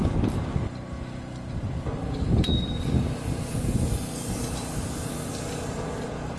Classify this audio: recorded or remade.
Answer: recorded